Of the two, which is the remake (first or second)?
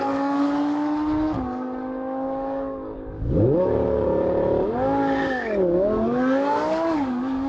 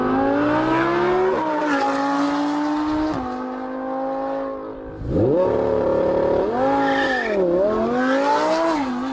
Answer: first